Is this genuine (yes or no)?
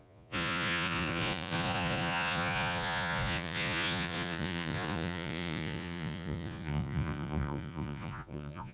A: no